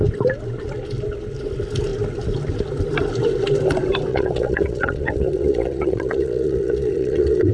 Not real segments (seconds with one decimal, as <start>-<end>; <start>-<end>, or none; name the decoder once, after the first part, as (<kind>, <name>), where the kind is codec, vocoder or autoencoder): 4.1-7.5 (vocoder, Vocos)